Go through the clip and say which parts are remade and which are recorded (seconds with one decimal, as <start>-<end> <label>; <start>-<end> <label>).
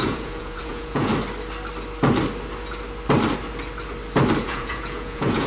0.0-1.1 remade; 1.1-4.4 recorded; 4.4-5.5 remade